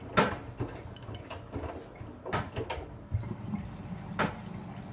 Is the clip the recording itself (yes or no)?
yes